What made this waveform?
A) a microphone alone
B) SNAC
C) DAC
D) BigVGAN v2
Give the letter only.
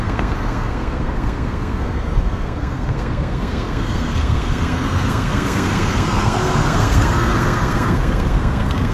B